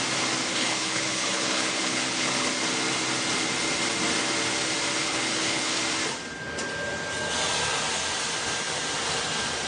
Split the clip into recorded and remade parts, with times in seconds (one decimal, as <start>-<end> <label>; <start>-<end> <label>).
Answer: 0.0-0.5 recorded; 0.5-2.5 remade; 2.5-5.0 recorded; 5.0-5.8 remade; 5.8-9.7 recorded